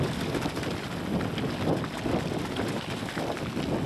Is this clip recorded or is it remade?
recorded